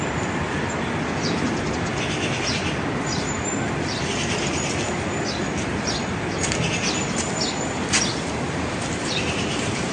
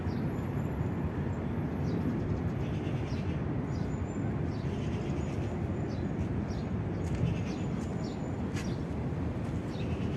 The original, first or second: second